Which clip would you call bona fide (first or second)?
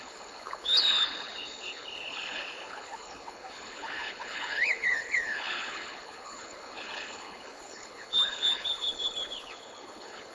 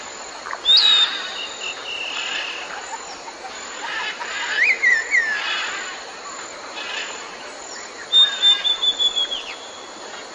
second